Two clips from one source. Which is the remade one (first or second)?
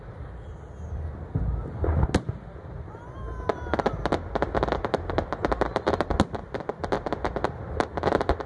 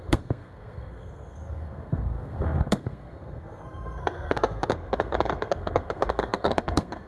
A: second